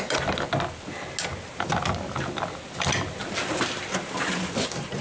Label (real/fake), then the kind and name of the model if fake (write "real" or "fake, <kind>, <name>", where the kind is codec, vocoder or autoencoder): real